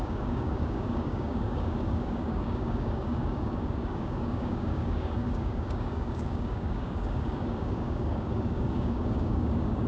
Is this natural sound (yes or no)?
no